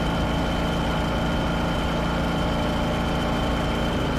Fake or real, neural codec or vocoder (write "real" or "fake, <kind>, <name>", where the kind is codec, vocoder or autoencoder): real